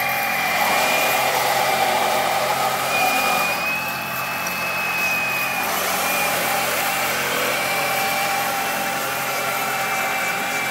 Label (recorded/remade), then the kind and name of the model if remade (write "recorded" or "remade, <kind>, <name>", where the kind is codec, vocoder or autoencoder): remade, vocoder, BigVGAN v2